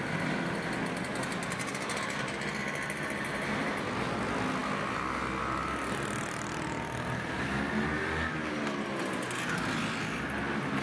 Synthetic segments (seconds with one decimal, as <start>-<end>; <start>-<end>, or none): none

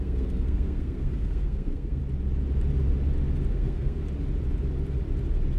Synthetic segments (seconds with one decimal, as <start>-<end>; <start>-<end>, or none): 0.0-2.0; 3.5-4.0

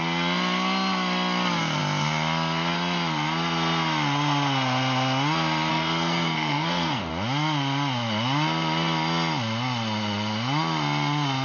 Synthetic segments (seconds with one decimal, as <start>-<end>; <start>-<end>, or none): 5.7-7.1

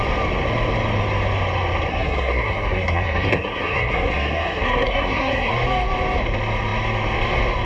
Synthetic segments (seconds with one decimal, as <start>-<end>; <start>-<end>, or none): 1.9-5.5

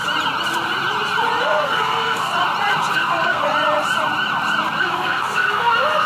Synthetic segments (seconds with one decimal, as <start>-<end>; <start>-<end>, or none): 1.4-2.3; 2.9-3.4; 4.8-6.1